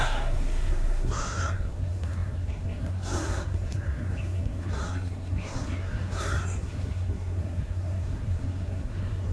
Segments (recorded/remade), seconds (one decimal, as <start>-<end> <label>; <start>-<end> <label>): 0.0-9.3 remade